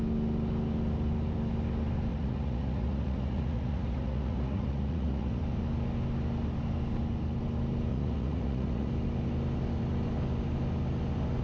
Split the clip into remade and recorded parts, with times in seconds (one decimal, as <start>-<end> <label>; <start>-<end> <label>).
0.0-2.1 recorded; 2.1-5.4 remade; 5.4-7.9 recorded; 7.9-8.9 remade; 8.9-11.4 recorded